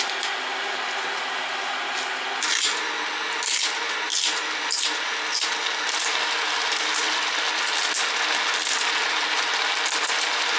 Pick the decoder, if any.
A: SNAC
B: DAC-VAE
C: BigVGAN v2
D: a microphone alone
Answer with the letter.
D